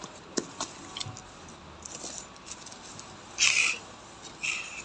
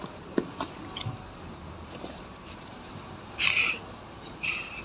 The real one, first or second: first